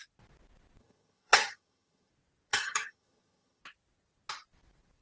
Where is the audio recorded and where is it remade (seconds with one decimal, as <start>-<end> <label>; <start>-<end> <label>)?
0.0-0.8 recorded; 0.8-2.1 remade; 2.1-2.5 recorded; 2.5-3.6 remade; 3.6-5.0 recorded